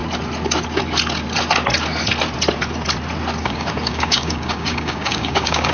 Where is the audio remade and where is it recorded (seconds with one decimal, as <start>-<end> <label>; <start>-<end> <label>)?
0.0-3.4 recorded; 3.4-5.7 remade